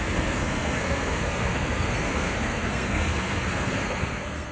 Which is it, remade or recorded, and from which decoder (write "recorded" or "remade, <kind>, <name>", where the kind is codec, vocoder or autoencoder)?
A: remade, codec, SNAC